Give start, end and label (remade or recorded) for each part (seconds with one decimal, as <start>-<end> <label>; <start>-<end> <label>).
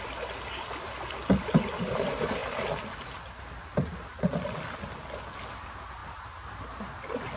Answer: 0.0-7.4 recorded